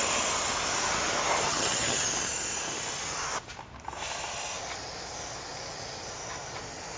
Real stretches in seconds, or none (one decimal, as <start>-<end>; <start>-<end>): 0.0-1.5; 2.1-7.0